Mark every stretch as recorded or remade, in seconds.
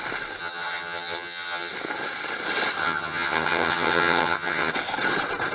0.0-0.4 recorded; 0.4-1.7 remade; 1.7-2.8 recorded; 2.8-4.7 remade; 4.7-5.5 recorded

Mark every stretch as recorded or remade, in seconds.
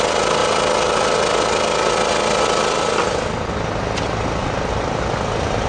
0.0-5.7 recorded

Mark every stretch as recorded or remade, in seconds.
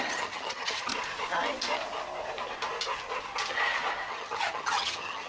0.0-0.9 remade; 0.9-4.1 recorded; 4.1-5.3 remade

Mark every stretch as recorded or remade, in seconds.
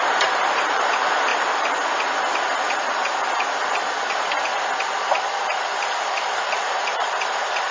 0.0-1.3 remade; 1.3-5.8 recorded; 5.8-7.7 remade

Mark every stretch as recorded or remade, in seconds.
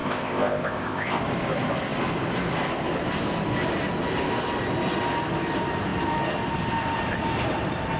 0.0-1.2 remade; 1.2-8.0 recorded